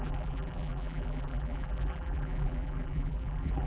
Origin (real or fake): fake